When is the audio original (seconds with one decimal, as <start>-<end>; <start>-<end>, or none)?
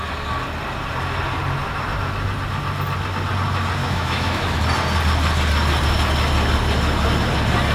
0.0-3.8; 4.6-7.7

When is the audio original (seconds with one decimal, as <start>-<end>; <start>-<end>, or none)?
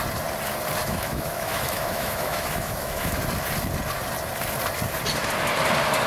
0.0-0.8; 3.2-6.1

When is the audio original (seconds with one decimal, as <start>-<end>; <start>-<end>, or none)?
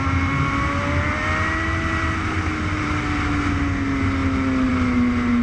0.0-5.4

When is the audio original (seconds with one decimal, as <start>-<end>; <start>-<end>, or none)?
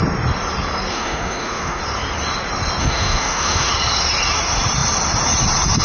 0.0-0.9; 1.8-2.8; 3.7-5.8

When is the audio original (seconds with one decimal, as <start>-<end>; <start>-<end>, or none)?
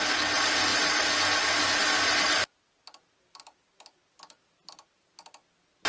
0.0-5.9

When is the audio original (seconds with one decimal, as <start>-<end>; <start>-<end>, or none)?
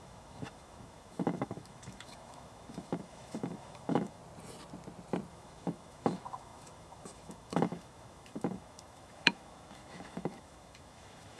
4.2-5.3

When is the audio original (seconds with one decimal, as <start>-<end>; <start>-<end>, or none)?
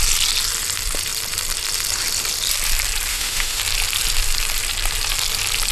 0.0-3.1; 3.6-5.7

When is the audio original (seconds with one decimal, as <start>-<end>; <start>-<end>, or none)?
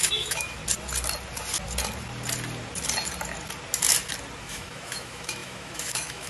0.6-4.4